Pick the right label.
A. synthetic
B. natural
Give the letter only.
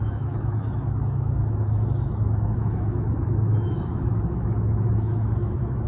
A